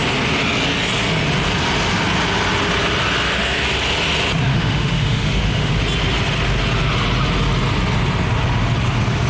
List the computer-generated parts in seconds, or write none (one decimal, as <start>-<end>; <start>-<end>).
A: 4.5-5.7